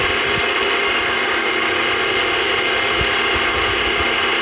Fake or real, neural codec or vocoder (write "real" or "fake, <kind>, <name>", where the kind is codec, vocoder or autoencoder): real